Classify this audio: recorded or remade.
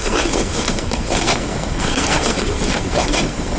remade